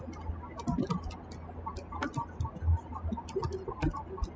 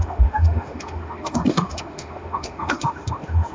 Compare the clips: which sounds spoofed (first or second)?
second